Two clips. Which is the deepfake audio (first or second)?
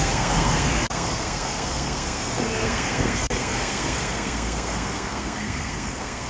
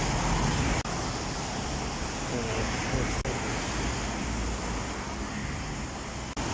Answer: first